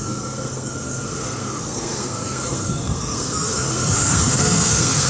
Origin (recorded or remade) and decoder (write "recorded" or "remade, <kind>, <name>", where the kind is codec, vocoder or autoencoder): remade, codec, SNAC